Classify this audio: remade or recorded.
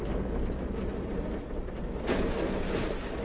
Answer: recorded